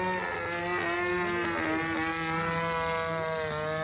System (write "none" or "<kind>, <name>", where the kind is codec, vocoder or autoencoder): none